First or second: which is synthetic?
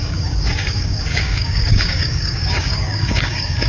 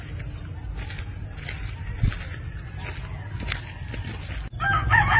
first